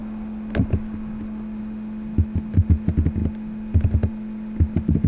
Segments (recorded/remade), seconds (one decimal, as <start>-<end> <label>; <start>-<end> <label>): 0.0-5.1 recorded